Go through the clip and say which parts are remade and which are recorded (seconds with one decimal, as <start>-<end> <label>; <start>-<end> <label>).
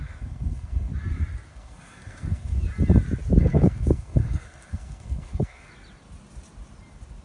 0.0-0.9 remade; 0.9-1.5 recorded; 1.5-2.6 remade; 2.6-3.4 recorded; 3.4-5.7 remade; 5.7-7.2 recorded